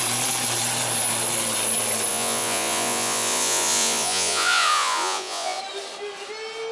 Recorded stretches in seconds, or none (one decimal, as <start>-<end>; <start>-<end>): 0.0-2.1; 5.6-6.7